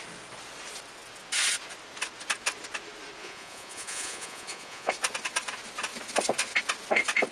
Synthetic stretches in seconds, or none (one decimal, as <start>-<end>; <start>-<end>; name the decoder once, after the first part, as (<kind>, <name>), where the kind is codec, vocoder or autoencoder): 3.2-4.9 (vocoder, Vocos)